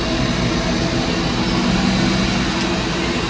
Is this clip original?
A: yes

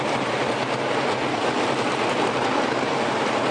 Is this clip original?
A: no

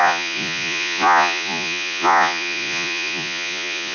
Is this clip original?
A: no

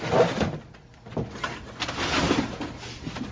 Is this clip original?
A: yes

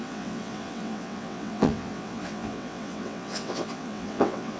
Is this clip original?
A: no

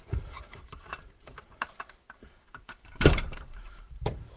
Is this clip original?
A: no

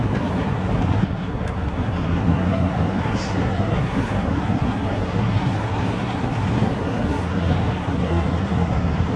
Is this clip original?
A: no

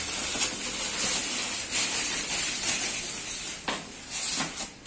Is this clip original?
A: yes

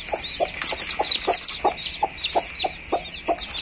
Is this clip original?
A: yes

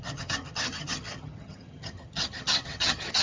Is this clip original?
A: no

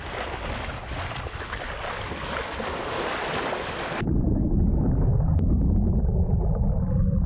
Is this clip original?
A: yes